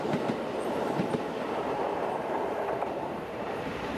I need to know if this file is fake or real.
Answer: fake